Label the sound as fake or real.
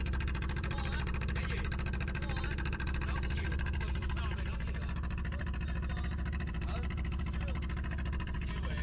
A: fake